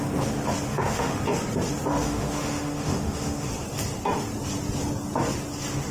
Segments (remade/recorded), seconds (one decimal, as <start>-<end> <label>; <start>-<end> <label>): 0.0-0.7 recorded; 0.7-1.2 remade; 1.2-1.9 recorded; 1.9-3.5 remade; 3.5-5.9 recorded